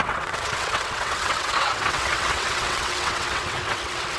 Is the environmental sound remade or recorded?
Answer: remade